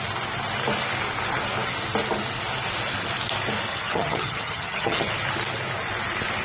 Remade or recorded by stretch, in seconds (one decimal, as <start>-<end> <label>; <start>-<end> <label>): 0.0-3.7 recorded; 3.7-5.1 remade; 5.1-6.4 recorded